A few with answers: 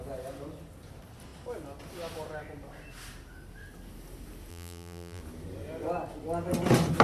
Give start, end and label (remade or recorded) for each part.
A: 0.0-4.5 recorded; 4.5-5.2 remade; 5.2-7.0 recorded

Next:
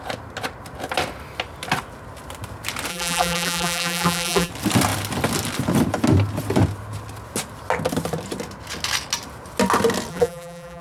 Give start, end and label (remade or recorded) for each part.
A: 0.0-2.9 recorded; 2.9-4.5 remade; 4.5-10.1 recorded; 10.1-10.8 remade

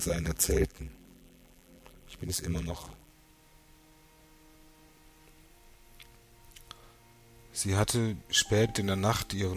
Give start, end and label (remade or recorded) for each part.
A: 0.0-3.1 remade; 3.1-9.6 recorded

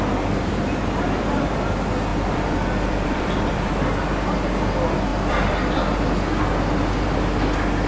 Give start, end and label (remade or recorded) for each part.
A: 0.0-2.1 recorded; 2.1-3.7 remade; 3.7-5.1 recorded; 5.1-6.0 remade; 6.0-7.9 recorded

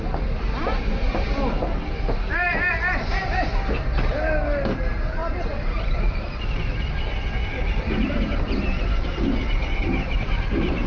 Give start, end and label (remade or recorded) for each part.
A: 0.0-5.2 recorded; 5.2-6.9 remade; 6.9-10.9 recorded

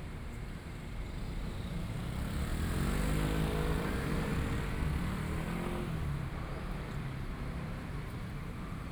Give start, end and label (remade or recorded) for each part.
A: 0.0-2.5 remade; 2.5-3.8 recorded; 3.8-4.3 remade; 4.3-7.3 recorded; 7.3-8.9 remade

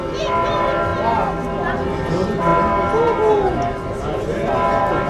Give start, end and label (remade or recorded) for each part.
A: 0.0-5.1 recorded